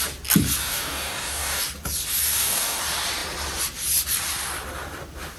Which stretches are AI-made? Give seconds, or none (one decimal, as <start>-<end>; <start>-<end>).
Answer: 0.6-1.6; 2.2-2.8